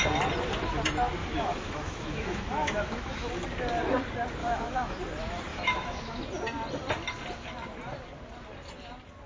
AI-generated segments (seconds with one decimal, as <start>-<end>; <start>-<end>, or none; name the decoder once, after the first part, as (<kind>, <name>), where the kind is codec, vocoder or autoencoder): 1.2-3.3 (autoencoder, DAC-VAE); 4.4-5.0; 5.5-6.2